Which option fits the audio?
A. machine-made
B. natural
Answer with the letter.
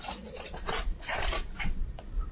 A